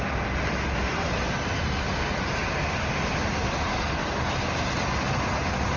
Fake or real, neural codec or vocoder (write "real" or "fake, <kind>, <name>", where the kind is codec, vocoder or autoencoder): real